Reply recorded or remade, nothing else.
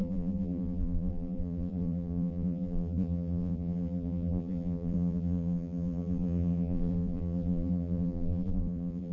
remade